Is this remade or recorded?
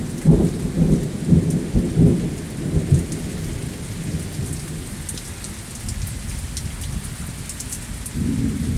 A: recorded